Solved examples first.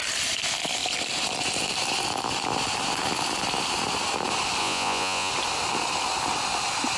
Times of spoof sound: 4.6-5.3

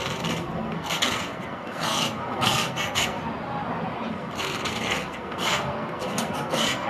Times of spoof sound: 0.0-3.2; 4.1-6.9